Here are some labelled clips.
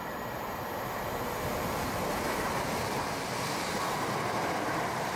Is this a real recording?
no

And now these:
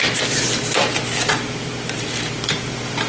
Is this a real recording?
no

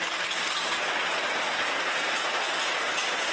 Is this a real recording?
yes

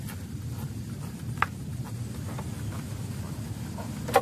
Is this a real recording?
yes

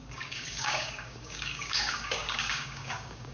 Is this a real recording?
no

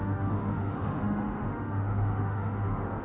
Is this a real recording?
no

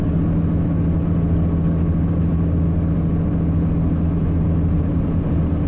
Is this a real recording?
yes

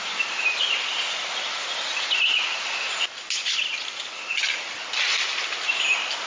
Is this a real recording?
yes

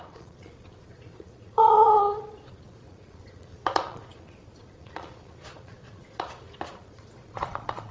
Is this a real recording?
no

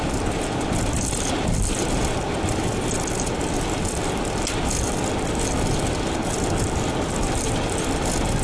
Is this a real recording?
yes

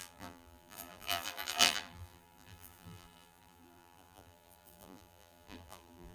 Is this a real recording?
no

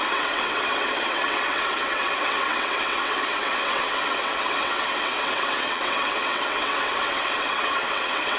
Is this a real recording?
no